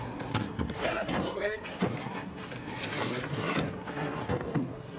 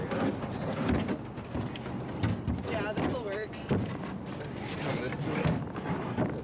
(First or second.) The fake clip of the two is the first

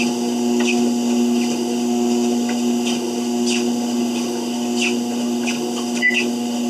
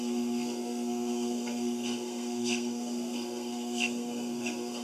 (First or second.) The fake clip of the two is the second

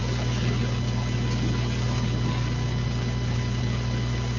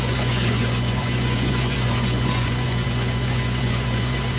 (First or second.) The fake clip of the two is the second